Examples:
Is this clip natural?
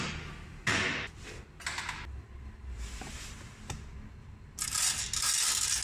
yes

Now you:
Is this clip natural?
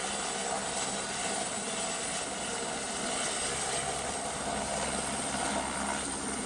yes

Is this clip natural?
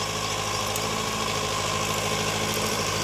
no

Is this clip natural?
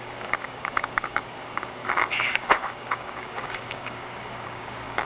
no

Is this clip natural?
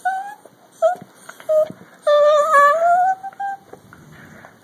yes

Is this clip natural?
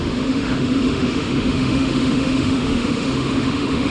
no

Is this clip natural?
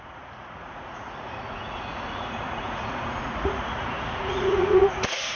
no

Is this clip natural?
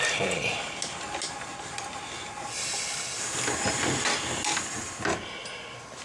yes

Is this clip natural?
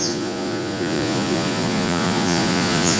no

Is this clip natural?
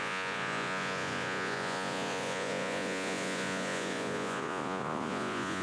no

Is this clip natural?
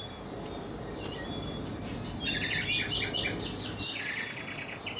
yes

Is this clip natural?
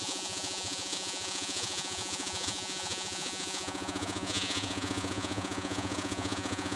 no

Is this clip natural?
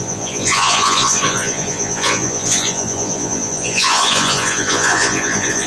no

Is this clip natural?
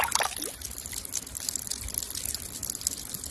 yes